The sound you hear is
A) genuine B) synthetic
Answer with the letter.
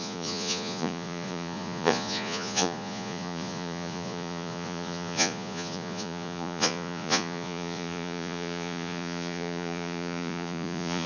B